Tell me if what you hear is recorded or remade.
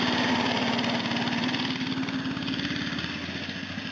recorded